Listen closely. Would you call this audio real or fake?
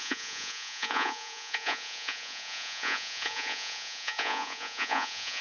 fake